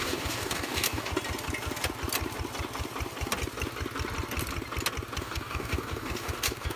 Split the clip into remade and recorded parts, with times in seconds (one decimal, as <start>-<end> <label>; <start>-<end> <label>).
0.0-1.1 remade; 1.1-5.2 recorded; 5.2-6.8 remade